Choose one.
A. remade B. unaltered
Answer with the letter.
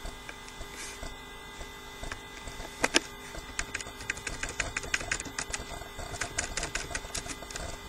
B